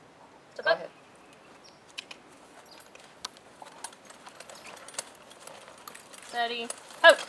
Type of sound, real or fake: real